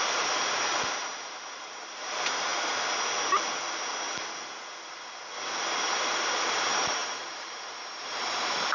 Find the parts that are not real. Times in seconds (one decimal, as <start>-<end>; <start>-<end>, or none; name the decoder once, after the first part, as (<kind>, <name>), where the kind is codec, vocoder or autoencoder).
0.0-2.5 (vocoder, BigVGAN v2); 5.8-8.7